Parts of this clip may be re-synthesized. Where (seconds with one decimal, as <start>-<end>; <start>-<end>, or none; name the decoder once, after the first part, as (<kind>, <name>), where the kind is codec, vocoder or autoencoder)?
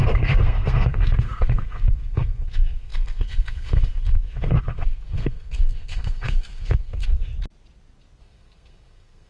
0.0-7.3 (codec, SNAC); 8.2-9.3